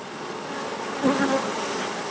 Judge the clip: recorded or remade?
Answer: recorded